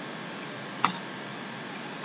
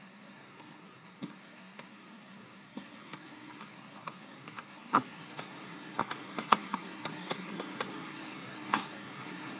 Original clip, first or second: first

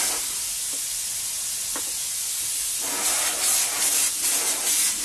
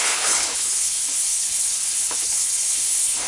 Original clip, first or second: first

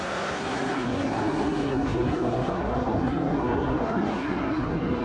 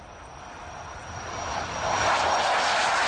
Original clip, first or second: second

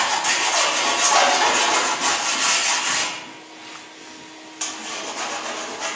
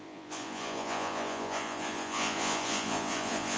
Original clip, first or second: first